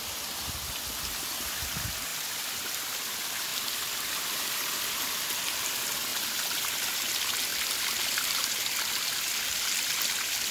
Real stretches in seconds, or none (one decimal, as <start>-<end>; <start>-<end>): 0.0-2.1; 2.8-3.5; 4.8-6.1; 6.7-7.5; 8.5-10.5